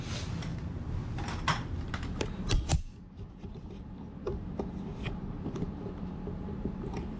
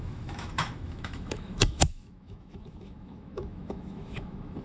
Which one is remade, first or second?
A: second